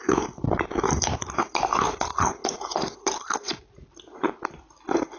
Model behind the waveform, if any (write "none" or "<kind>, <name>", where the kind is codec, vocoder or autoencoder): none